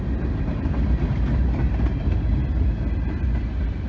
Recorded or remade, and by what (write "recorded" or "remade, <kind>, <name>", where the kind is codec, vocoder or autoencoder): recorded